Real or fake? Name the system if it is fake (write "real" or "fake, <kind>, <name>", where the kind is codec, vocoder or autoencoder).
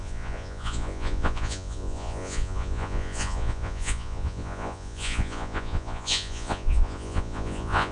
fake, vocoder, Vocos